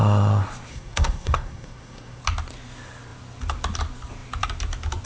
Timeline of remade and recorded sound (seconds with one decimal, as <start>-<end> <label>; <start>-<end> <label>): 0.0-0.7 recorded; 0.7-2.2 remade; 2.2-5.1 recorded